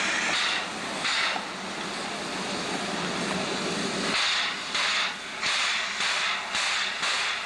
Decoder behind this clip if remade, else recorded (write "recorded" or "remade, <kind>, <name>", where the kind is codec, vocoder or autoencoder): recorded